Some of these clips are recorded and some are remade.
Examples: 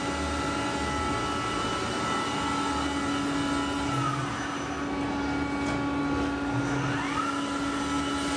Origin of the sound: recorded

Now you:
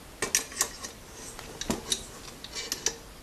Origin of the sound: recorded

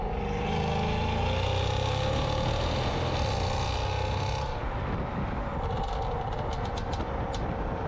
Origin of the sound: recorded